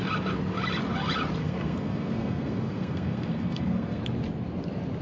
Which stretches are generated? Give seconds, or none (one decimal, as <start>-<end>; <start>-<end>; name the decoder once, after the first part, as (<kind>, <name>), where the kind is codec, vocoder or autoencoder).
1.4-4.0 (codec, SNAC)